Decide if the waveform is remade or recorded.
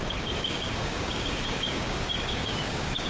remade